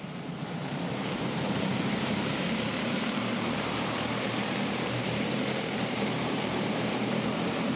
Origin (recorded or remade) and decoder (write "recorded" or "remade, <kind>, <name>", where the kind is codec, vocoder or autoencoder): remade, vocoder, BigVGAN v2